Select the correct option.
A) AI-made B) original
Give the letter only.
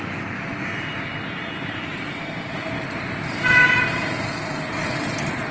B